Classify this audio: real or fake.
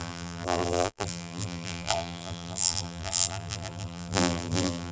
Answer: fake